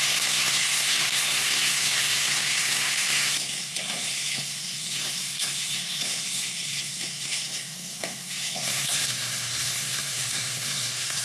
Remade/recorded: remade